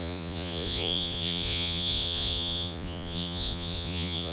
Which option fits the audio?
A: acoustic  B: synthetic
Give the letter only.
B